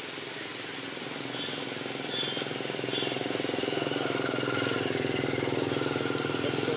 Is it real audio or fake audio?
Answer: real